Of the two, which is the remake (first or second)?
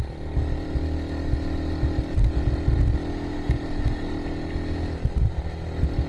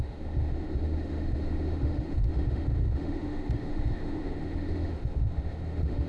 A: second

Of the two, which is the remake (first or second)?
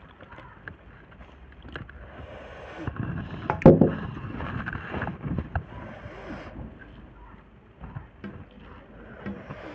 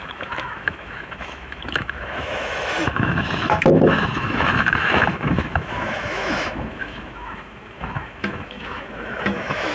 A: second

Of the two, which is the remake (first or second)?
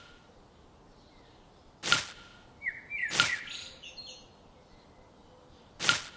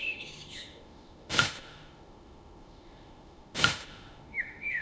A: second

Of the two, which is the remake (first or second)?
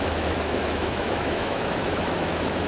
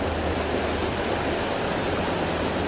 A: first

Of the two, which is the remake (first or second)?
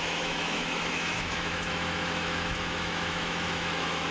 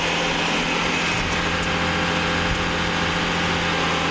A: first